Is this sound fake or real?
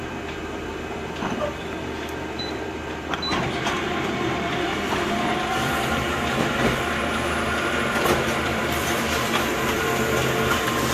fake